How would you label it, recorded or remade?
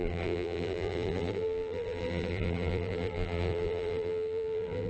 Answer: remade